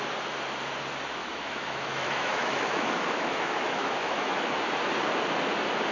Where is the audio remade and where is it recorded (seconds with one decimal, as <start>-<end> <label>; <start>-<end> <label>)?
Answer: 0.0-1.2 recorded; 1.2-4.7 remade; 4.7-5.9 recorded